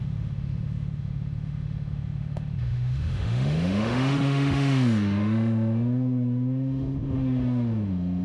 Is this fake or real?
fake